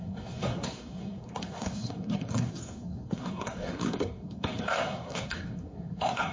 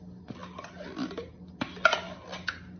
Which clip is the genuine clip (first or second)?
second